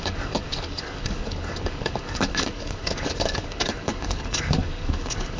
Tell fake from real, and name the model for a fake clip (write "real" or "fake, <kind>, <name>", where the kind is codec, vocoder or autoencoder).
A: fake, codec, DAC